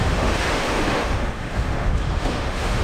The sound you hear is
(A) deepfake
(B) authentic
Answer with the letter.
A